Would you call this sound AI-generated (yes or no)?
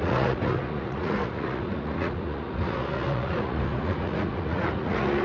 yes